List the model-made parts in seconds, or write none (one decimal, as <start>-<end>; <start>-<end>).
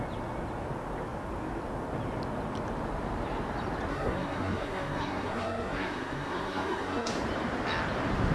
3.9-7.1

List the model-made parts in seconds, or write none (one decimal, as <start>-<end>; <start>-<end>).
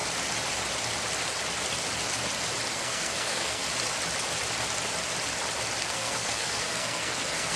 2.7-3.6; 5.8-7.6